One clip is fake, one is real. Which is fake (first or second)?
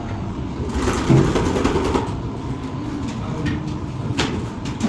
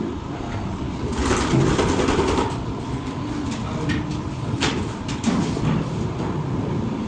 second